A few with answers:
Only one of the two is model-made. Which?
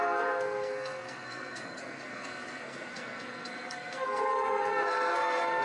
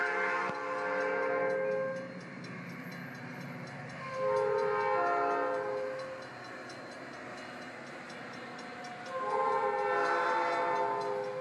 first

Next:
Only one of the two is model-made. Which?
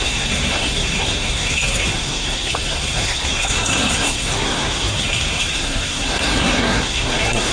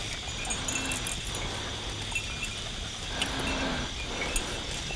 first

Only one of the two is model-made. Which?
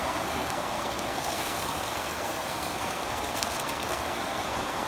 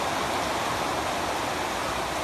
first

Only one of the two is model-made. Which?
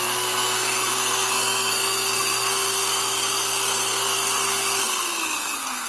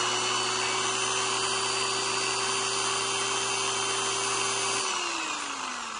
first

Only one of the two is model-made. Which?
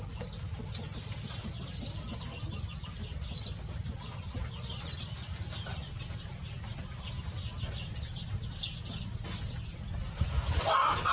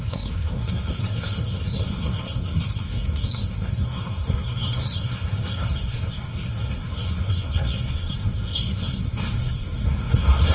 second